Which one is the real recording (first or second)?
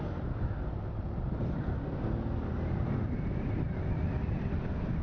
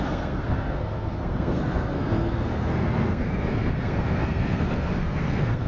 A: first